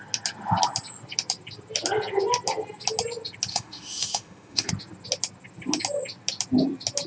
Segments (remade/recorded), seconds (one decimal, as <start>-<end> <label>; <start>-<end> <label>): 0.0-3.5 recorded; 3.5-4.7 remade; 4.7-7.1 recorded